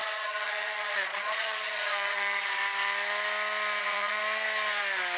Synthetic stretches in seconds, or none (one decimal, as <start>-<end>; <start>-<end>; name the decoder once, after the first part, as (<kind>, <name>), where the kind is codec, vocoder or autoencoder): 0.0-2.6 (vocoder, Vocos); 3.8-4.2